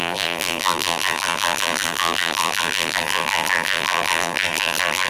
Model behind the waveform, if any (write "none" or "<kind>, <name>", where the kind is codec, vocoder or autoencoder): vocoder, BigVGAN v2